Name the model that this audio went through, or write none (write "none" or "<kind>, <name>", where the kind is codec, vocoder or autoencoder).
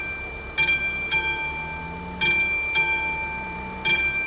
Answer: none